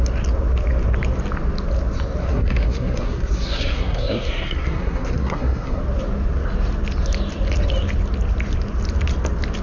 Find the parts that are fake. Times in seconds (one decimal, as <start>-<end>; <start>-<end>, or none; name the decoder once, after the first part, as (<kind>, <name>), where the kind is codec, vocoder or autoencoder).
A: 2.2-5.8 (codec, SNAC)